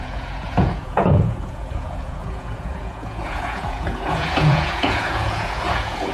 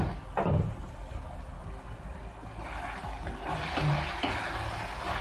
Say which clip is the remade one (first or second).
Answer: first